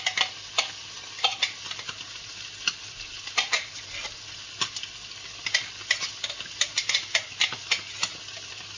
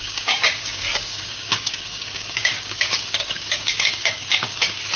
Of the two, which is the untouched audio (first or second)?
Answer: first